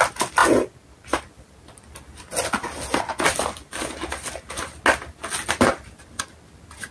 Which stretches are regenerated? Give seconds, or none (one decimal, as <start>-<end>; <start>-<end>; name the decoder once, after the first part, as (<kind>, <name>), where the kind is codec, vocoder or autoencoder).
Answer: none